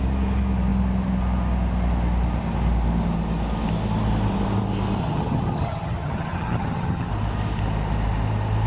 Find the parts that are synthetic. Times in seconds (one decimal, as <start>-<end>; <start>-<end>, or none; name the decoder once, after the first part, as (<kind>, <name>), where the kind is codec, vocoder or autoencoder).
5.0-7.1 (vocoder, HiFi-GAN)